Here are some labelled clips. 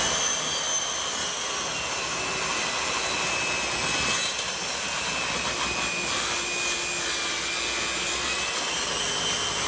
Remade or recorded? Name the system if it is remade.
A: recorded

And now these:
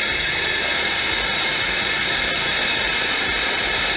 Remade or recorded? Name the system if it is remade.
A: remade, vocoder, BigVGAN v2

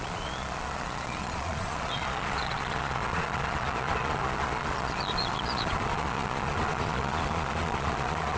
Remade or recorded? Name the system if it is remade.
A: remade, vocoder, Vocos